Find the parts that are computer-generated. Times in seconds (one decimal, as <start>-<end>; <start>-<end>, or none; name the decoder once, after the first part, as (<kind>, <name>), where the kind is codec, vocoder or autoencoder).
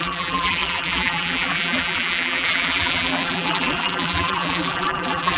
0.0-5.4 (vocoder, BigVGAN v2)